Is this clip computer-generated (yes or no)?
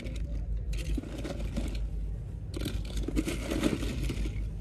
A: no